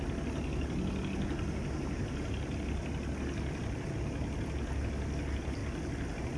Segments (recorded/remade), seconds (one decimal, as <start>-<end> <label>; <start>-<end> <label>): 0.0-6.4 recorded